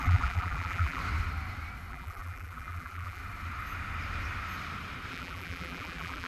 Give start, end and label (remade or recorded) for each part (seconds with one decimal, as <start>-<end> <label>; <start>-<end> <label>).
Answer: 0.0-1.0 remade; 1.0-1.9 recorded; 1.9-3.2 remade; 3.2-5.1 recorded; 5.1-6.3 remade